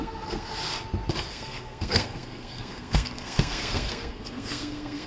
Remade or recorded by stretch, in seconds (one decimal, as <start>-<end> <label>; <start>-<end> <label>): 0.0-0.5 remade; 0.5-1.3 recorded; 1.3-5.1 remade